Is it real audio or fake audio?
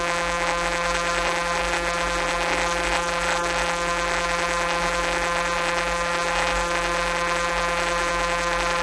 fake